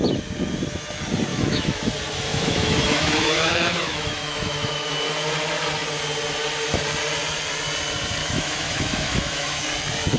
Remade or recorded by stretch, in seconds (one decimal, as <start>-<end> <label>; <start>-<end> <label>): 0.0-1.3 recorded; 1.3-1.9 remade; 1.9-2.3 recorded; 2.3-4.9 remade; 4.9-8.2 recorded; 8.2-9.6 remade; 9.6-10.2 recorded